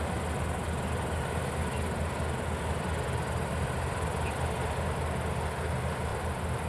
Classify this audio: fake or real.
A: real